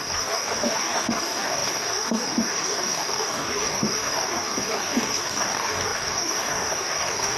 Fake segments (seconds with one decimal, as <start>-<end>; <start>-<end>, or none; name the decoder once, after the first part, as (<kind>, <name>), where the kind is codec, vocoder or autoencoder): 0.0-7.4 (codec, DAC)